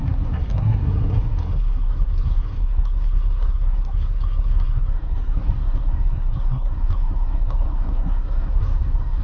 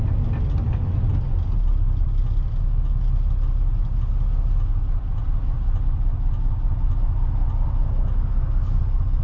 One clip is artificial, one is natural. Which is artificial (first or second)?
first